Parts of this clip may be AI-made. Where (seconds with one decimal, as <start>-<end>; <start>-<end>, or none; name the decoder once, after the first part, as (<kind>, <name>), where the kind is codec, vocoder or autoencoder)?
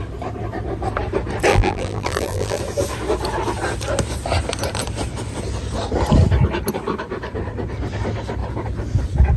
1.5-2.6 (vocoder, BigVGAN v2)